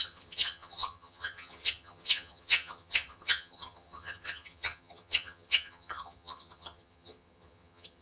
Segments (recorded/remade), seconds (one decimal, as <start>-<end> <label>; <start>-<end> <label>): 0.0-8.0 remade

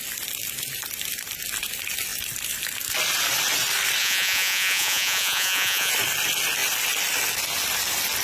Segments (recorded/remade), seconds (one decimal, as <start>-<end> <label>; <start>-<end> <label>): 0.0-4.0 recorded; 4.0-5.9 remade; 5.9-8.2 recorded

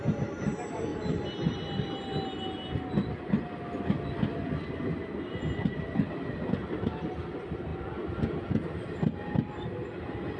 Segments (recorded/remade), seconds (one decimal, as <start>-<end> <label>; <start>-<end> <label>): 0.0-10.4 recorded

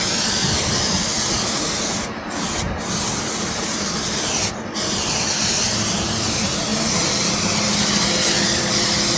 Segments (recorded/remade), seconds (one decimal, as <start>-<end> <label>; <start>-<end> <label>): 0.0-9.2 recorded